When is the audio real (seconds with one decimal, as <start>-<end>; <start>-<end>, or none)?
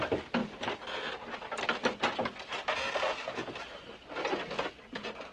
0.0-5.3